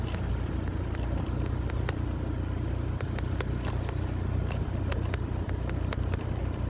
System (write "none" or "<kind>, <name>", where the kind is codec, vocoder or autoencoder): none